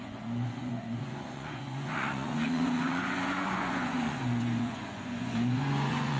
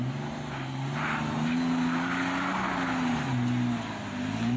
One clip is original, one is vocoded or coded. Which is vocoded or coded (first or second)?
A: first